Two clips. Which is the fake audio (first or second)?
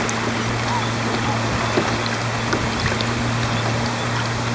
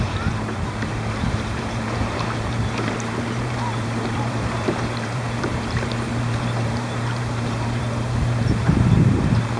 second